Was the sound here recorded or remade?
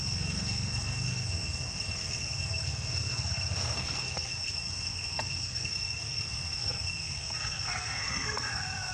remade